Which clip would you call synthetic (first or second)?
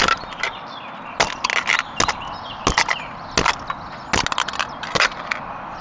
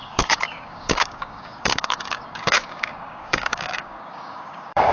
second